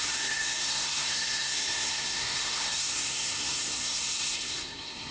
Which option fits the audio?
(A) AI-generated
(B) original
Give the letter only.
A